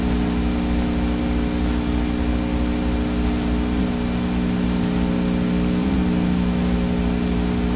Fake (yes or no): no